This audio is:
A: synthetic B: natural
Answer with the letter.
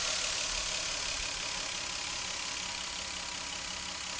B